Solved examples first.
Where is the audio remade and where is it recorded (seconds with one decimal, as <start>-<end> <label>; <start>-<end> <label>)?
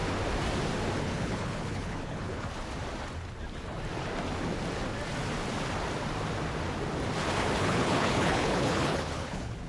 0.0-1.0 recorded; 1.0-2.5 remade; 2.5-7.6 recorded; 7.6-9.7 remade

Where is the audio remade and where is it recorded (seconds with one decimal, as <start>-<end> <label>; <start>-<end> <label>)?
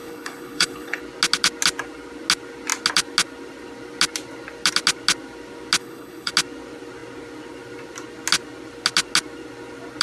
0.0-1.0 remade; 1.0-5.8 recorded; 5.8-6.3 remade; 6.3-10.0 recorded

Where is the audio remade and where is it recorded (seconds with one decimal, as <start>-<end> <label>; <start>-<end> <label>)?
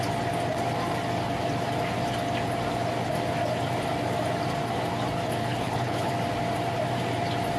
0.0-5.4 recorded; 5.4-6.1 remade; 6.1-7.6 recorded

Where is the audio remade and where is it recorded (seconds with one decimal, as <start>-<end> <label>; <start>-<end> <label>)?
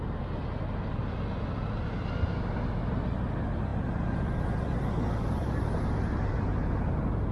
0.0-7.3 recorded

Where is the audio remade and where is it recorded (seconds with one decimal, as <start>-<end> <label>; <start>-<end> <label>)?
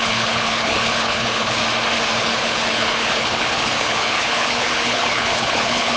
0.0-1.6 remade; 1.6-2.2 recorded; 2.2-6.0 remade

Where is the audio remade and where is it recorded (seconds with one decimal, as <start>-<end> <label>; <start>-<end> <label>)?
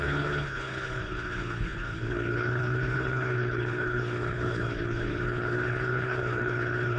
0.0-7.0 remade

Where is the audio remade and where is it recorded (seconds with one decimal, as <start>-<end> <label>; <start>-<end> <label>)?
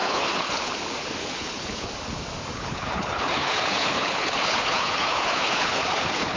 0.0-0.7 remade; 0.7-1.2 recorded; 1.2-1.9 remade; 1.9-2.5 recorded; 2.5-6.4 remade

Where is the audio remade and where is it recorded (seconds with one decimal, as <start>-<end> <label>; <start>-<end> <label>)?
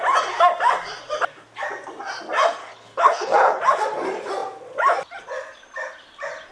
0.0-2.6 recorded; 2.6-3.6 remade; 3.6-6.5 recorded